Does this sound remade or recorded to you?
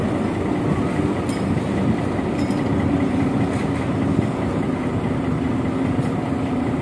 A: recorded